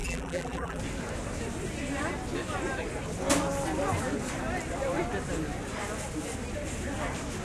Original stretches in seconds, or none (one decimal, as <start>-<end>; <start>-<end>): 0.8-7.4